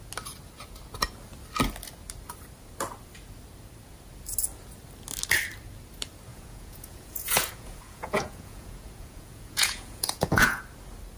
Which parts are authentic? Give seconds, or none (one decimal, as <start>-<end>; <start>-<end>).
0.0-6.3; 10.6-11.2